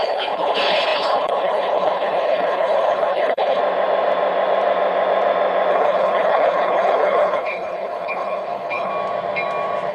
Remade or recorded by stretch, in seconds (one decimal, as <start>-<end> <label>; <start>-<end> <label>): 0.0-3.6 remade; 3.6-5.7 recorded; 5.7-8.9 remade; 8.9-9.9 recorded